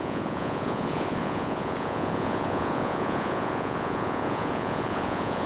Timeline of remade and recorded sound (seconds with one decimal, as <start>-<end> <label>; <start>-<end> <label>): 0.0-5.5 remade